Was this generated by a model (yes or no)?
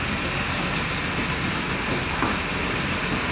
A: no